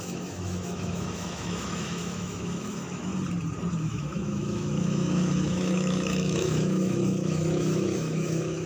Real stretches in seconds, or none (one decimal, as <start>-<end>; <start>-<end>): 3.1-3.7

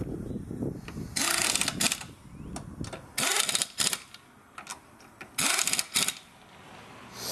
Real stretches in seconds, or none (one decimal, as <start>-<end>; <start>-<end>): 0.0-7.3

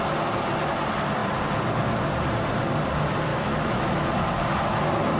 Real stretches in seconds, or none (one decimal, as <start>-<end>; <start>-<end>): 0.0-3.3; 4.1-5.2

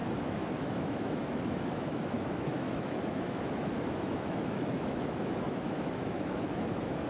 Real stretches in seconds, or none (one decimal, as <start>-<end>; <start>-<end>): none

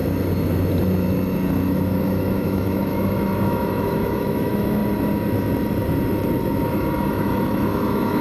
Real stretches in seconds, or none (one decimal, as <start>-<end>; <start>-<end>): 0.0-1.7; 4.8-6.7

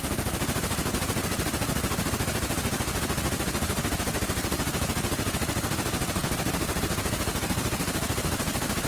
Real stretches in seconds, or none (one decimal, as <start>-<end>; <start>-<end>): 0.0-8.9